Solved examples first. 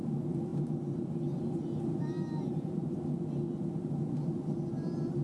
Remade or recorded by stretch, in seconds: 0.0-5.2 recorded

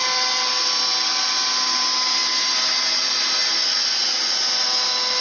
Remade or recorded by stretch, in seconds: 0.0-5.2 recorded

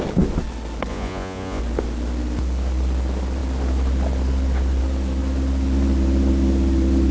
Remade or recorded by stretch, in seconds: 0.0-0.9 recorded; 0.9-1.6 remade; 1.6-7.1 recorded

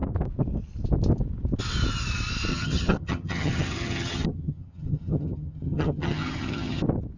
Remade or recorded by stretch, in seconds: 0.0-2.5 recorded; 2.5-6.8 remade; 6.8-7.2 recorded

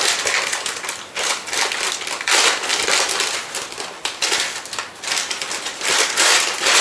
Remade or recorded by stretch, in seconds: 0.0-6.8 remade